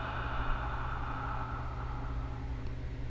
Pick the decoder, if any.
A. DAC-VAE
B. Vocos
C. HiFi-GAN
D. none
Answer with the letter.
D